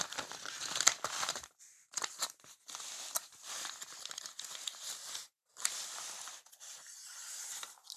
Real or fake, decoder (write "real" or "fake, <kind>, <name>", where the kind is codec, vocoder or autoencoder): fake, vocoder, BigVGAN v2